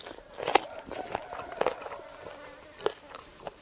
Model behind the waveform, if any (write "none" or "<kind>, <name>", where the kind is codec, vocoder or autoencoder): none